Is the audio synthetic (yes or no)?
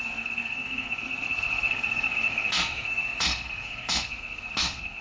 yes